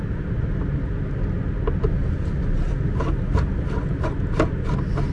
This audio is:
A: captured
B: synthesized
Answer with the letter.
A